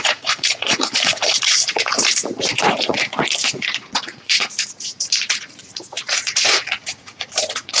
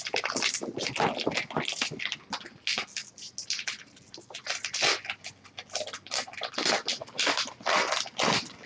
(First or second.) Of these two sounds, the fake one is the first